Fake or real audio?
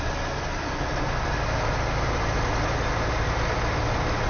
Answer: real